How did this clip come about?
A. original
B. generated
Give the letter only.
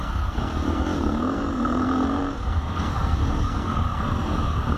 B